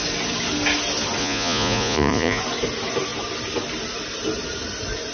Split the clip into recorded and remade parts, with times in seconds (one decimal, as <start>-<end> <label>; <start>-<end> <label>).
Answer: 0.0-1.2 recorded; 1.2-2.4 remade; 2.4-5.1 recorded